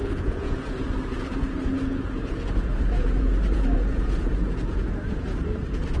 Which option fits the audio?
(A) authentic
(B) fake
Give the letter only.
B